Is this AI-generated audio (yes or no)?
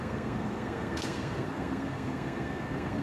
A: yes